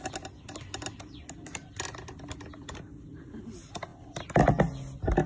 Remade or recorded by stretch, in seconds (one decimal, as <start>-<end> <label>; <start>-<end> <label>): 0.0-5.3 recorded